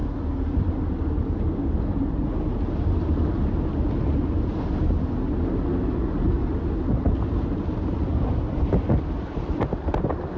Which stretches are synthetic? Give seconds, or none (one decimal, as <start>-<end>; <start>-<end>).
none